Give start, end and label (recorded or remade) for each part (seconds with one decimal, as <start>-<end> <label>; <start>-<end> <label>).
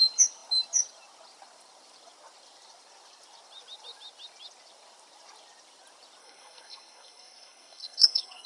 0.0-6.2 recorded; 6.2-8.5 remade